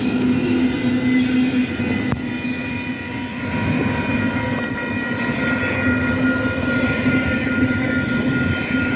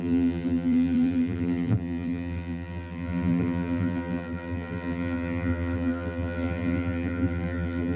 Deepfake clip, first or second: second